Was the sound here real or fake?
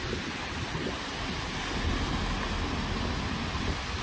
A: real